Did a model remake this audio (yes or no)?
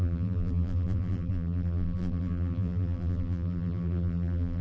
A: yes